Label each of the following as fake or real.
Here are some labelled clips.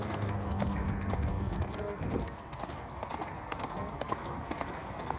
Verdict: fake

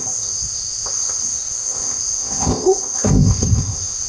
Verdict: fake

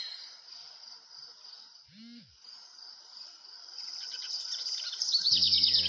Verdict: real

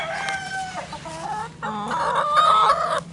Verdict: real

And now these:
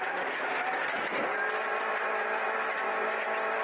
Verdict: real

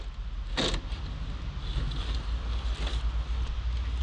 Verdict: real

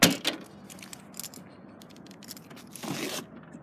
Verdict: real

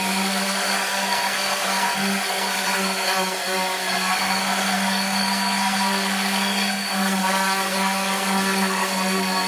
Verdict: fake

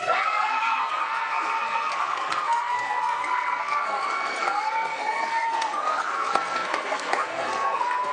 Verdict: fake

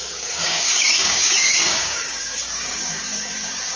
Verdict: fake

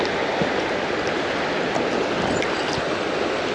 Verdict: real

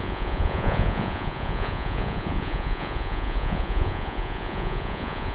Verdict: fake